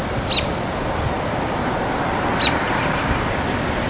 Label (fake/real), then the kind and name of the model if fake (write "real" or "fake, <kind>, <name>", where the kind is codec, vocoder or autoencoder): real